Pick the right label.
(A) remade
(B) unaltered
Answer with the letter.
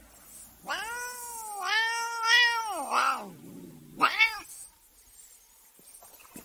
B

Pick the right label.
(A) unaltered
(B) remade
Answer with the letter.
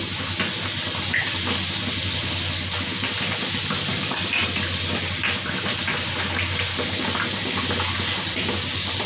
A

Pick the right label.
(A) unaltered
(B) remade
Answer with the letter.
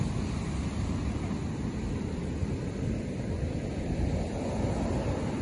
A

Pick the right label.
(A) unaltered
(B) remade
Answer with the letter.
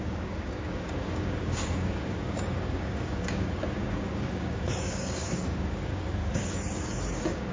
B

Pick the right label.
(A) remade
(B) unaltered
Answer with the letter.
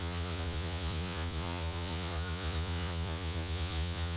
A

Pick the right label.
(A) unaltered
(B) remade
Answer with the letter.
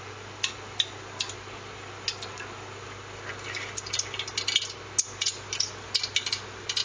A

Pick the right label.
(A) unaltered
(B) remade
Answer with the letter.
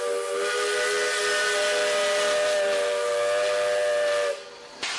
A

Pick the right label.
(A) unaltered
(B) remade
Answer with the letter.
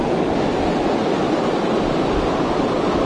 A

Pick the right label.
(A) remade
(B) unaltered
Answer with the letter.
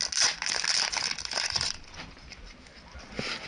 B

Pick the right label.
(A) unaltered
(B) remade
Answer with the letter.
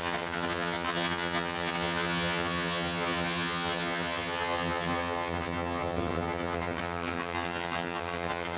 B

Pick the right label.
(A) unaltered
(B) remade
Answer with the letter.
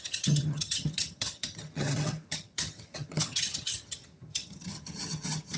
B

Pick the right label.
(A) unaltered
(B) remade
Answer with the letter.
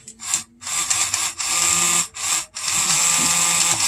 A